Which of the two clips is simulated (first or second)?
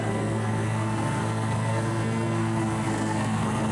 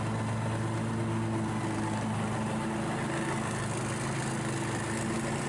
first